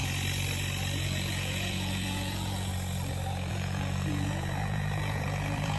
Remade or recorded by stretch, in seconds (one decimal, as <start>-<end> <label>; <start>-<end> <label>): 0.0-1.0 recorded; 1.0-2.7 remade; 2.7-3.5 recorded; 3.5-5.8 remade